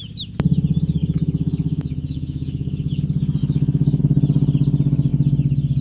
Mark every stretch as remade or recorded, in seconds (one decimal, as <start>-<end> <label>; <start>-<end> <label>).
0.0-1.0 recorded; 1.0-3.0 remade; 3.0-3.4 recorded; 3.4-4.0 remade; 4.0-5.8 recorded